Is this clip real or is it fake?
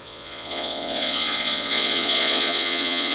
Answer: fake